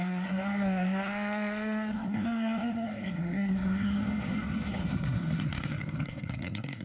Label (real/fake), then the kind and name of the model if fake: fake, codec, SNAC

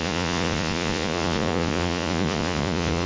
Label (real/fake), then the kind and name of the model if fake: fake, vocoder, Vocos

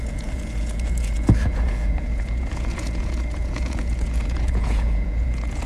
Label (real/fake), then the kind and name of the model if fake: fake, vocoder, Vocos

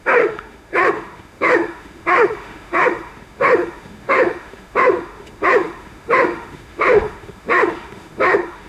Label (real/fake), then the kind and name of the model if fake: fake, autoencoder, DAC-VAE